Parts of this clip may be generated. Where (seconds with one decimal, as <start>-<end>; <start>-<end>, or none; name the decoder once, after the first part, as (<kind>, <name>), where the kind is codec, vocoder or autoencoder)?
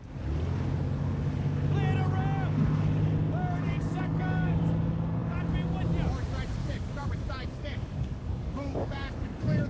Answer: 3.9-4.6 (codec, DAC); 6.6-9.7